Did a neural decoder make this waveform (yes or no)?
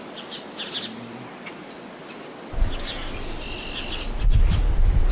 no